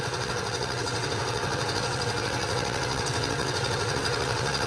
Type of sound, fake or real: fake